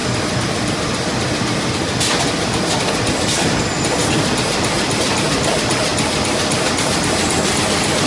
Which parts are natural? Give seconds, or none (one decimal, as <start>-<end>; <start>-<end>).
5.9-7.0